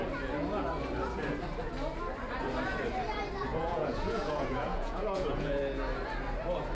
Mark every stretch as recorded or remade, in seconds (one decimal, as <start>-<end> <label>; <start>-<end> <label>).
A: 0.0-3.5 recorded; 3.5-5.6 remade; 5.6-6.7 recorded